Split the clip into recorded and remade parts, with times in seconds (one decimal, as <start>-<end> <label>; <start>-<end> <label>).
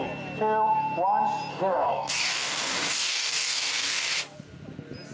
0.0-1.5 recorded; 1.5-4.1 remade; 4.1-5.1 recorded